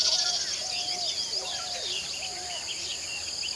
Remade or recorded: recorded